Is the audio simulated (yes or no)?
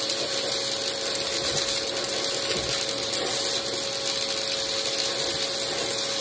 no